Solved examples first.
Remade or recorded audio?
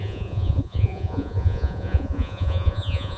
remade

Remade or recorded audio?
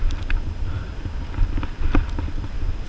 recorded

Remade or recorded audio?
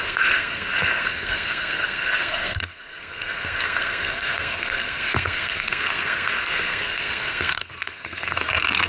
remade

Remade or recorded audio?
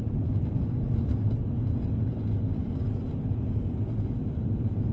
recorded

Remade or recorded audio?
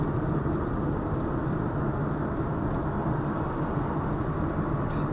recorded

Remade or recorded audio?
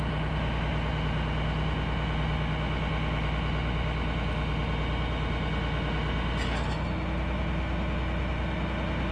recorded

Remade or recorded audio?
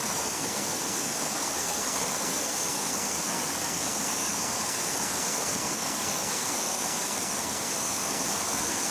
remade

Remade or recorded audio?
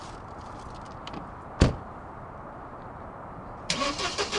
recorded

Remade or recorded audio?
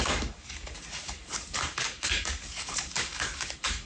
remade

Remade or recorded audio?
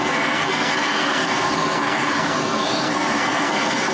remade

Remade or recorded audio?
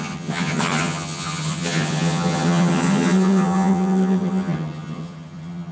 remade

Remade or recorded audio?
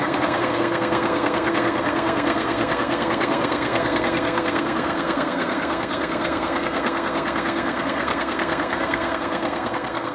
remade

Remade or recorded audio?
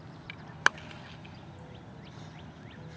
recorded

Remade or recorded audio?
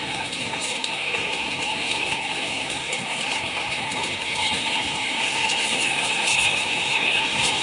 remade